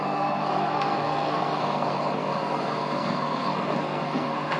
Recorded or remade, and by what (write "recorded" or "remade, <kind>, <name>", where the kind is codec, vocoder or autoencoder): remade, codec, SNAC